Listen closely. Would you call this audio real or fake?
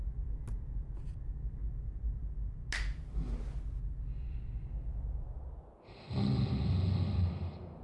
real